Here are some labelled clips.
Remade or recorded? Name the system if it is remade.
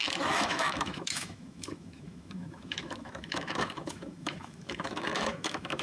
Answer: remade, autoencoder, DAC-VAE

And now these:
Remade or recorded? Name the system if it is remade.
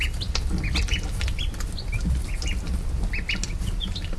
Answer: recorded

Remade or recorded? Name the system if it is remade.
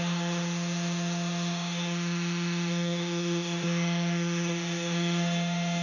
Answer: remade, autoencoder, DAC-VAE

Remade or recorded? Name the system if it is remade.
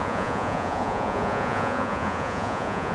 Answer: remade, vocoder, Vocos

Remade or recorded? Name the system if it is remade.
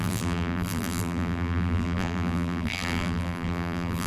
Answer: remade, vocoder, BigVGAN v2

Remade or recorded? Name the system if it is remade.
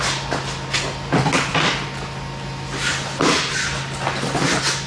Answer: recorded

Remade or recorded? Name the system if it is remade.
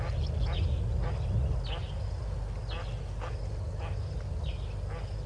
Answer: recorded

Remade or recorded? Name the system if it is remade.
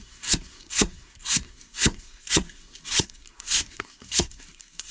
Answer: remade, codec, SNAC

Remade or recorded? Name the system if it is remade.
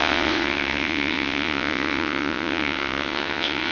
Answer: remade, vocoder, WaveNeXt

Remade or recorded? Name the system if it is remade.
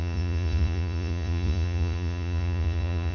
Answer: remade, vocoder, Vocos